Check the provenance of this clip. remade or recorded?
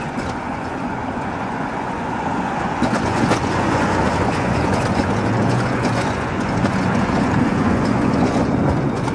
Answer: remade